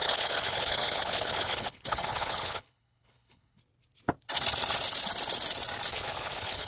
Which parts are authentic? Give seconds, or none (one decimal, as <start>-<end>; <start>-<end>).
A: 3.6-5.9

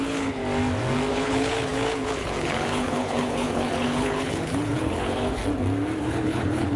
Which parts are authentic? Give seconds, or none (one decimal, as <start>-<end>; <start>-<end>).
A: 0.4-1.1; 5.4-6.0

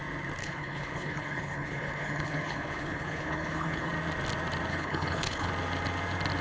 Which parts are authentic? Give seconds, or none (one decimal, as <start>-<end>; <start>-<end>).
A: 0.0-0.4; 3.9-4.7; 5.5-6.4

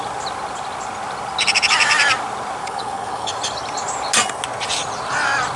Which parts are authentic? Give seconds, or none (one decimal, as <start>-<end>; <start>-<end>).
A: 0.0-2.6; 3.3-5.6